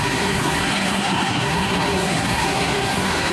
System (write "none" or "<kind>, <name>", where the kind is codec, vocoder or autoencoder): codec, SNAC